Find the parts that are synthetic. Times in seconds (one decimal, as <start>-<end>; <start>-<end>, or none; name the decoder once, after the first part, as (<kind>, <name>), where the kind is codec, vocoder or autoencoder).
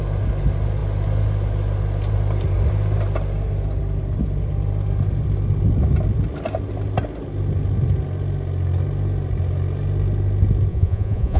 10.7-11.4 (vocoder, Vocos)